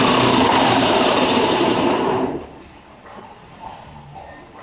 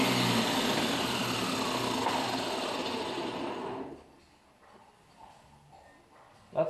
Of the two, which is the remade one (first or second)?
first